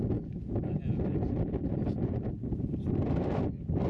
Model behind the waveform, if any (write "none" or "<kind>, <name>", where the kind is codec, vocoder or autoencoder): vocoder, BigVGAN v2